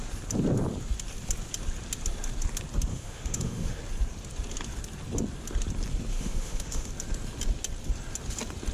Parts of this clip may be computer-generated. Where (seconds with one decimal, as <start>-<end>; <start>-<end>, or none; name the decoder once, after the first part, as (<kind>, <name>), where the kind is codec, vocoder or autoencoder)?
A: 2.9-3.8 (autoencoder, DAC-VAE); 6.1-6.9